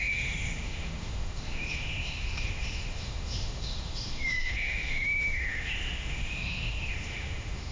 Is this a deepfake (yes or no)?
yes